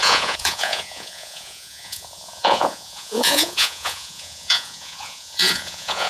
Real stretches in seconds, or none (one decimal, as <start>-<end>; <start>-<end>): none